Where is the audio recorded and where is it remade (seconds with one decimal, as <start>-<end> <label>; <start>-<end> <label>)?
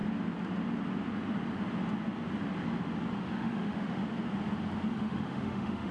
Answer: 0.0-3.2 recorded; 3.2-4.0 remade; 4.0-4.9 recorded; 4.9-5.9 remade